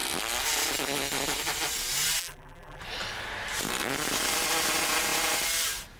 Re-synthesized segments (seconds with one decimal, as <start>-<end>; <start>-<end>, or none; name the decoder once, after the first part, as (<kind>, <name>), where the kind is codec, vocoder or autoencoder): 2.2-2.8 (vocoder, BigVGAN v2)